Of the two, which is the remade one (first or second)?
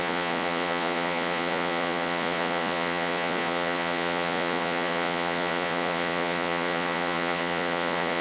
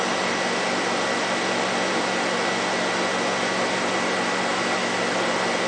first